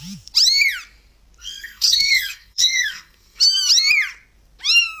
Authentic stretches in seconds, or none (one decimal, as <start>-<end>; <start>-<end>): 0.0-1.4; 3.4-5.0